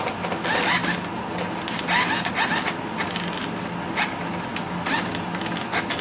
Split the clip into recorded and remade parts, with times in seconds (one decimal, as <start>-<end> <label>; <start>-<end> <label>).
0.0-6.0 recorded